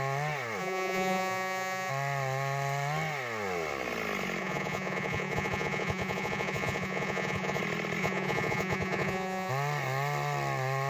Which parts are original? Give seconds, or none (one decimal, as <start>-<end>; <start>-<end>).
0.0-0.6; 1.9-4.4; 7.6-8.0; 9.5-10.9